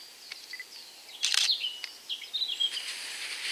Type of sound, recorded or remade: recorded